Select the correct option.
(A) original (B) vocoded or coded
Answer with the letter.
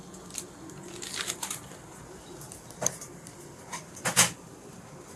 A